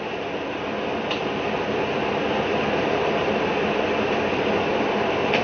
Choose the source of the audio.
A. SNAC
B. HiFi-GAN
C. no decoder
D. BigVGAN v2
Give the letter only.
D